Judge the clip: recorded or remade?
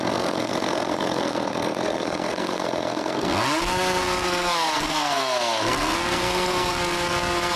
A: remade